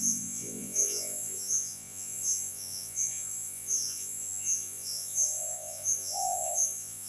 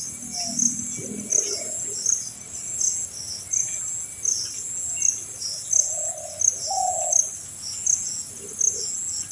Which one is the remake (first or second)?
first